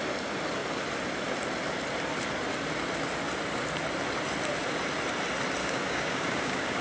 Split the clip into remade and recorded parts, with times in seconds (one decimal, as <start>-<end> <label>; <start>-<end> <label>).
0.0-5.6 recorded; 5.6-6.8 remade